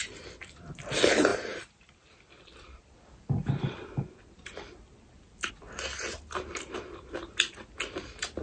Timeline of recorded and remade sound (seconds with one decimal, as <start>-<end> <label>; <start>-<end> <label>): 0.0-1.3 recorded; 1.3-5.5 remade; 5.5-8.4 recorded